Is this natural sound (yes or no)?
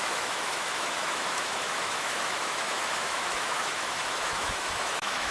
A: no